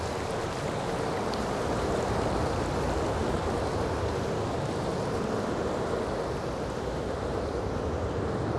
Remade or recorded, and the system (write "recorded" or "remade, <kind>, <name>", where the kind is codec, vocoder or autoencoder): recorded